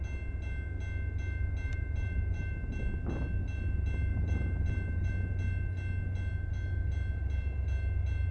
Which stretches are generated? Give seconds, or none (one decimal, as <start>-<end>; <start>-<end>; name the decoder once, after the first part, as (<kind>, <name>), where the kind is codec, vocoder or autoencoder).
1.7-2.8 (vocoder, BigVGAN v2); 4.1-5.1